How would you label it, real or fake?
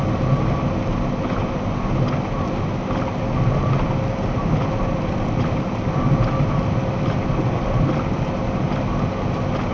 real